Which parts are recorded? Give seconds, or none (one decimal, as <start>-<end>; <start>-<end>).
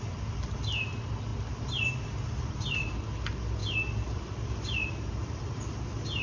0.0-3.6; 5.7-6.2